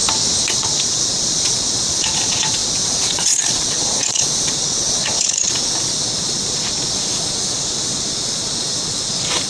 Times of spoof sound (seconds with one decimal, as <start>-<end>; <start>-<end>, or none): 0.5-9.5